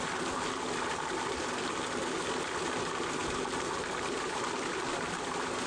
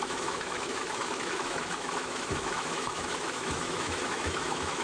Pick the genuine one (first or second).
first